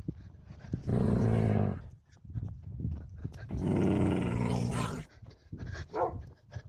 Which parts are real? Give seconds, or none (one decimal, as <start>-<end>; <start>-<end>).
0.0-3.2; 3.8-6.7